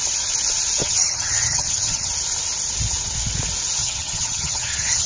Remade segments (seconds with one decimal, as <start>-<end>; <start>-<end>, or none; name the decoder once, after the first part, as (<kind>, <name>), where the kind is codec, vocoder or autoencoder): 0.8-2.1 (vocoder, HiFi-GAN); 3.8-5.1